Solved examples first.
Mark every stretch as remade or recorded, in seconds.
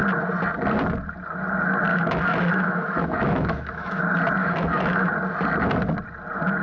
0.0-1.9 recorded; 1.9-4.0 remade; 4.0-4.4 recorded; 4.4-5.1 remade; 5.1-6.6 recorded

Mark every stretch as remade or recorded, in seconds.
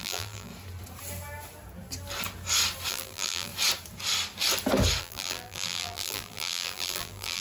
0.0-0.5 remade; 0.5-2.9 recorded; 2.9-3.5 remade; 3.5-5.0 recorded; 5.0-7.4 remade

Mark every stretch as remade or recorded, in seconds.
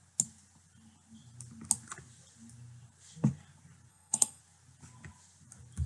0.0-3.9 recorded; 3.9-4.4 remade; 4.4-5.9 recorded